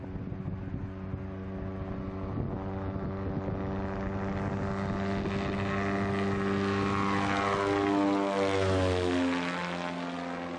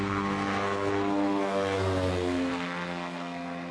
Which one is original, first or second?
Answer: first